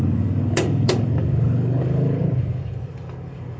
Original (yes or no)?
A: no